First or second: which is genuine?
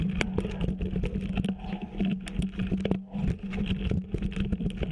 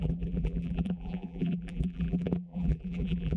first